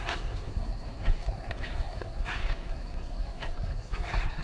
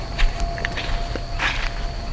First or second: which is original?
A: second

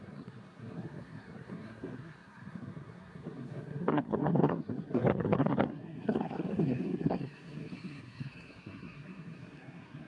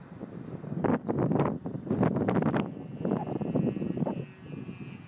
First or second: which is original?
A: second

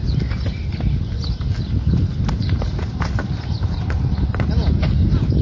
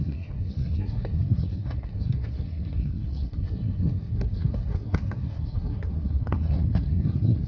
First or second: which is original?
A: first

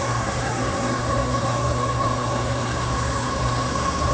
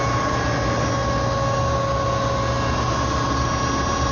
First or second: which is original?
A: second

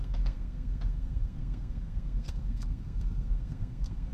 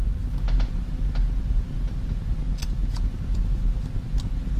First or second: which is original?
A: second